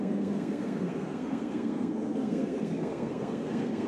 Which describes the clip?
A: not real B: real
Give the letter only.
A